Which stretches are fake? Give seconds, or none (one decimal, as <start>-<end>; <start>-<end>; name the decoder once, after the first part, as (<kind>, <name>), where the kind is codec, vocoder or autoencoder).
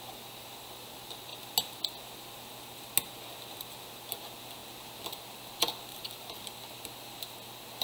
5.9-6.4 (vocoder, BigVGAN v2)